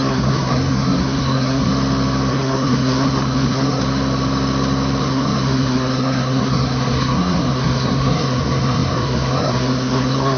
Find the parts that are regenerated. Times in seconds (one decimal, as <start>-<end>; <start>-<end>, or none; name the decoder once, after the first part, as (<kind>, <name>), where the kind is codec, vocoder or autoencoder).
0.0-1.7 (codec, SNAC); 2.3-3.8; 5.0-10.4